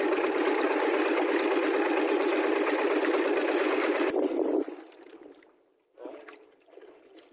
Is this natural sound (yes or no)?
yes